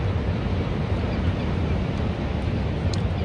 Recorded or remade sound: recorded